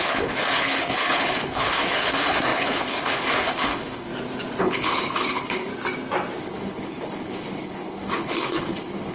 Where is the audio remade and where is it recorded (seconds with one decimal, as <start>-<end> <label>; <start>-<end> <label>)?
0.0-4.1 remade; 4.1-4.6 recorded; 4.6-5.7 remade; 5.7-6.4 recorded; 6.4-9.1 remade